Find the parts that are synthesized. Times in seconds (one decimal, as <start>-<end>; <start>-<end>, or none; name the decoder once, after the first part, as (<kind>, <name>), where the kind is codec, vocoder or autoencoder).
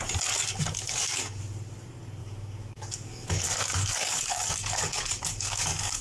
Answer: 0.4-1.4 (codec, DAC); 2.2-6.0